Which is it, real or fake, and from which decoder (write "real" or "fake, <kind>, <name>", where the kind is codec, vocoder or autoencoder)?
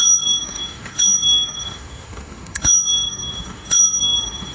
fake, autoencoder, DAC-VAE